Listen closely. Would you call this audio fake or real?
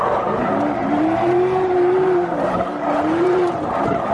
fake